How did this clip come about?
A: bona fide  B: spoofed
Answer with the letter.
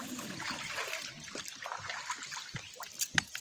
A